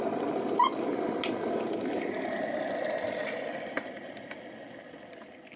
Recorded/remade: recorded